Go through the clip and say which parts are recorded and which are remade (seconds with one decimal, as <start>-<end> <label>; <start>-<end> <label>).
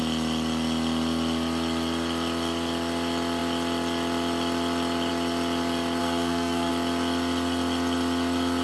0.0-6.0 recorded; 6.0-6.7 remade; 6.7-8.6 recorded